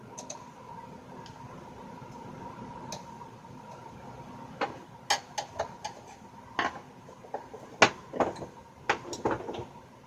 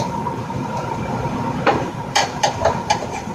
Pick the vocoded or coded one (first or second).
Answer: second